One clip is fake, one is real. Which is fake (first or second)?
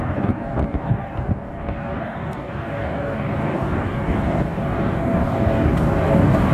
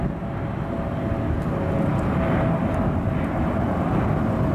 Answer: first